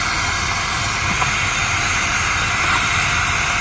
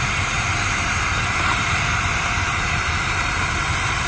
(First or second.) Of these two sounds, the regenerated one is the second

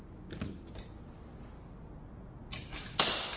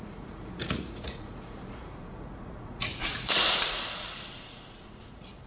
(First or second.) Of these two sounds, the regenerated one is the second